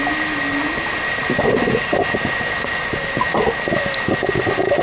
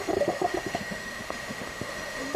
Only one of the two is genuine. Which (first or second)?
first